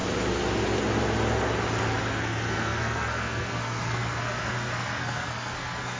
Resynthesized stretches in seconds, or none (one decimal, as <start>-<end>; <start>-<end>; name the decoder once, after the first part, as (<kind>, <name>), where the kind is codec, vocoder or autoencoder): 2.1-6.0 (codec, SNAC)